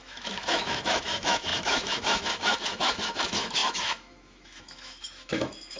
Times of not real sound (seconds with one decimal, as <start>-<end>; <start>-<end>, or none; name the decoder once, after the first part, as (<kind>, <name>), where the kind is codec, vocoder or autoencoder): 0.0-5.8 (autoencoder, DAC-VAE)